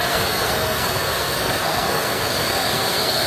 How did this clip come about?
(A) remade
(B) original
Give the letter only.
A